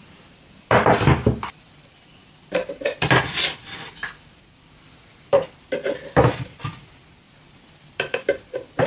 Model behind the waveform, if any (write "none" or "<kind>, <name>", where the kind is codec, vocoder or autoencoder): vocoder, BigVGAN v2